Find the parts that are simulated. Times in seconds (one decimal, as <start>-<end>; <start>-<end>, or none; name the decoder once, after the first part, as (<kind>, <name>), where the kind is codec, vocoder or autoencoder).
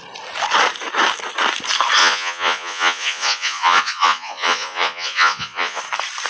2.0-5.8 (vocoder, Vocos)